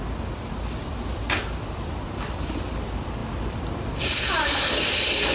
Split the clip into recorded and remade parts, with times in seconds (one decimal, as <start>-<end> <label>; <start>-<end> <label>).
0.0-5.3 recorded